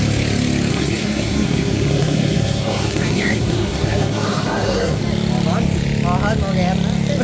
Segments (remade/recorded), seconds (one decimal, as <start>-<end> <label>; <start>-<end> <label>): 0.0-0.7 recorded; 0.7-5.0 remade; 5.0-7.2 recorded